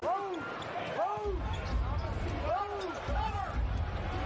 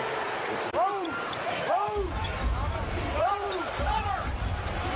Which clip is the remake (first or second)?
second